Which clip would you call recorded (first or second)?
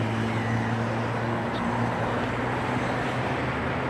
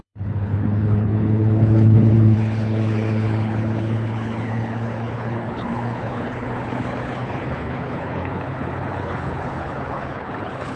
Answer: first